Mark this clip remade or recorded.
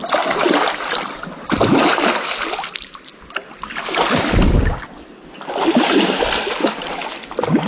recorded